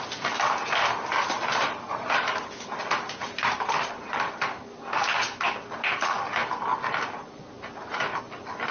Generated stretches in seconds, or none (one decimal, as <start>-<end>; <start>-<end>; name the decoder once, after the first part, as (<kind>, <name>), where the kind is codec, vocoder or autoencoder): 1.1-2.5 (vocoder, BigVGAN v2); 3.2-4.6; 6.7-8.2